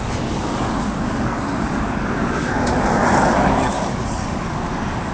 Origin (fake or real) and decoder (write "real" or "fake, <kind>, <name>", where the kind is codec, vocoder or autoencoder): fake, codec, DAC